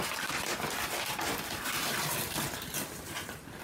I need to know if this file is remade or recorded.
remade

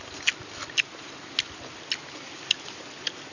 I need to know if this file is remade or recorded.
recorded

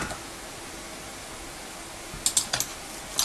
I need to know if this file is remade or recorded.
recorded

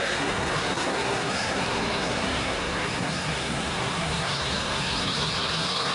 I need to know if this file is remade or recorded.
remade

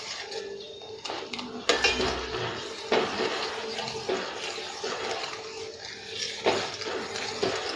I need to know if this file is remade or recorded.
recorded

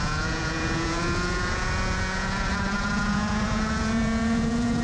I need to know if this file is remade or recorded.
remade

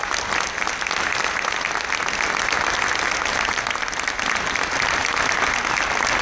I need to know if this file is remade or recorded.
recorded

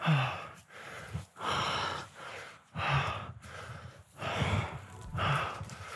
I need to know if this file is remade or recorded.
remade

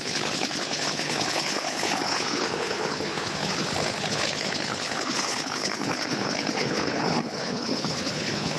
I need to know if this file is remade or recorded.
remade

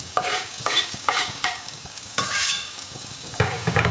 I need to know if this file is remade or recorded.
remade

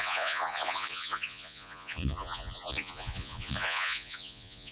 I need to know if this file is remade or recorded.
remade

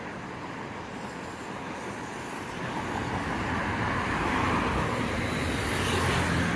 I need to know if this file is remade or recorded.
recorded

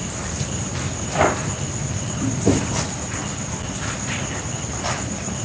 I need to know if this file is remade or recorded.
remade